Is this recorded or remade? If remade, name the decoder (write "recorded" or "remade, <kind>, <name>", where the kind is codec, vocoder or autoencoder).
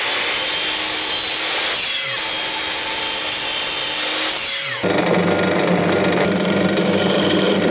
recorded